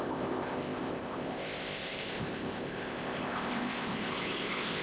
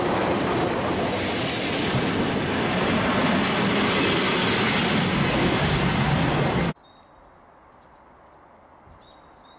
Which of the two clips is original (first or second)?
second